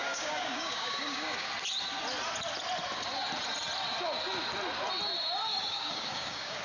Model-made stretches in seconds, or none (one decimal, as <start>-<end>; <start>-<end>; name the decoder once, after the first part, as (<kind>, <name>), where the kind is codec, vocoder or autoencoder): 0.0-1.5 (codec, DAC); 5.5-6.6